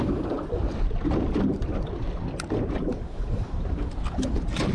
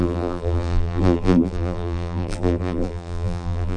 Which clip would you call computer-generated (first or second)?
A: second